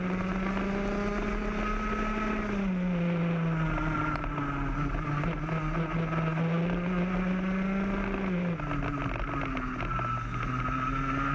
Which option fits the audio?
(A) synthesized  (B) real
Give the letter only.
B